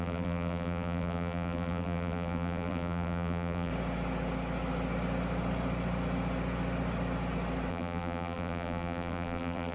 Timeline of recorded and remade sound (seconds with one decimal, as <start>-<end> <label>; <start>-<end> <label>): 0.0-3.7 remade; 3.7-7.7 recorded; 7.7-9.7 remade